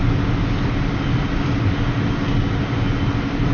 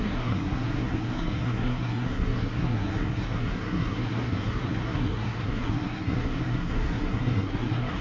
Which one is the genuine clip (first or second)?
first